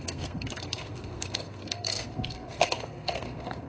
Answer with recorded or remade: remade